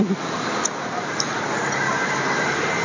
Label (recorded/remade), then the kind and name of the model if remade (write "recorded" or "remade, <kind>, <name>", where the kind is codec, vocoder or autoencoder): recorded